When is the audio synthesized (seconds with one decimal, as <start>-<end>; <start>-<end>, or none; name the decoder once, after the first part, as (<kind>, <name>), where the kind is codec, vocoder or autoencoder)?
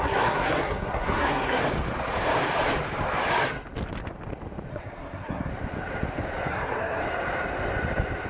0.0-1.6 (codec, SNAC); 4.7-5.5; 6.5-7.0